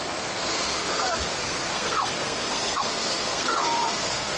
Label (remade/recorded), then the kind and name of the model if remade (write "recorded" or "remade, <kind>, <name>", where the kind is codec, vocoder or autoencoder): remade, codec, SNAC